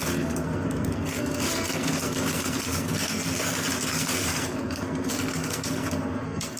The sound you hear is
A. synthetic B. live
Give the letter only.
A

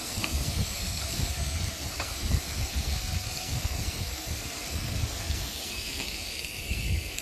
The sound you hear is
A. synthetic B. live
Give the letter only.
A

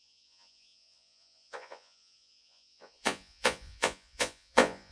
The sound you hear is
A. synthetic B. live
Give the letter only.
A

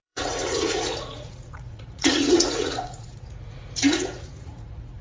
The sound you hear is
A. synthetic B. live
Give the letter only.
A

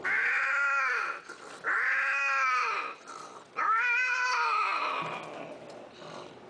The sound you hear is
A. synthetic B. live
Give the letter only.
B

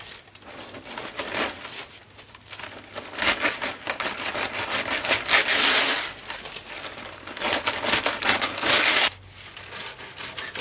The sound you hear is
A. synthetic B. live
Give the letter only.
B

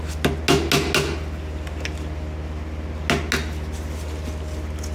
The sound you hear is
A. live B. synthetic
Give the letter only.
A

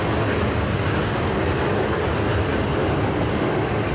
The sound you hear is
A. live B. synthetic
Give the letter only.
A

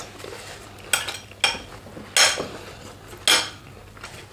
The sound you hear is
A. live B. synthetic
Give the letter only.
A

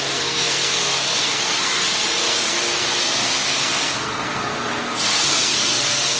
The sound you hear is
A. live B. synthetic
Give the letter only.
B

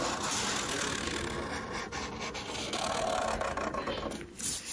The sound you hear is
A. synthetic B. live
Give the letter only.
B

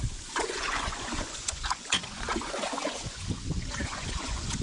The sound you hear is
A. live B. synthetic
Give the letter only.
B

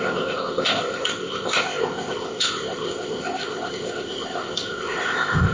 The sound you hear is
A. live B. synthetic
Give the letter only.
B